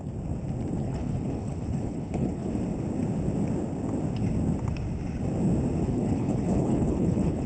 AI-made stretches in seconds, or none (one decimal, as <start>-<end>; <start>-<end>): 0.8-2.5; 5.8-7.5